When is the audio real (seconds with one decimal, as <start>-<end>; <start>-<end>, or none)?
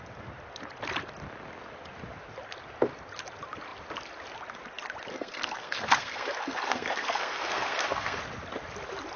0.0-5.1; 8.2-9.2